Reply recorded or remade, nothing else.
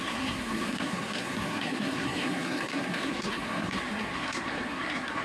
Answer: remade